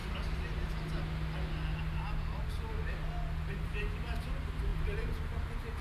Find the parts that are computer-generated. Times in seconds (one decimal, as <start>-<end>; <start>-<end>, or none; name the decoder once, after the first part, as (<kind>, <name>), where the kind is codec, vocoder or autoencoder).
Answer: 3.5-4.7 (vocoder, BigVGAN v2)